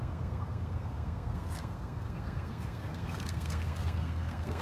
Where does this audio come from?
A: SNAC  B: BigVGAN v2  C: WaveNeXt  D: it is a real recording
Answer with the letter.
A